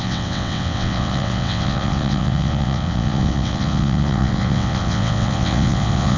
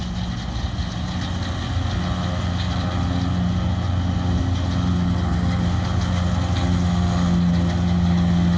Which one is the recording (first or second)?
second